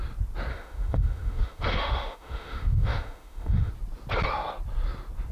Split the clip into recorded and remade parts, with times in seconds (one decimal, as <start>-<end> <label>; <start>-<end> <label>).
0.0-0.5 recorded; 0.5-3.7 remade; 3.7-5.3 recorded